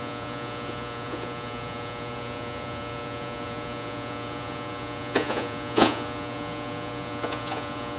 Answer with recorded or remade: remade